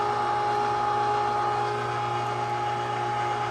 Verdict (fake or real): real